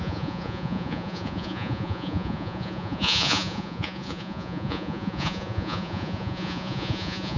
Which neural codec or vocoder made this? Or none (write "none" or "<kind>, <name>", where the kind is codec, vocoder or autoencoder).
vocoder, Vocos